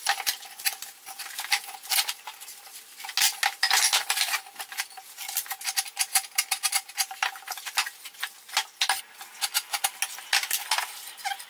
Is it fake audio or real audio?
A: real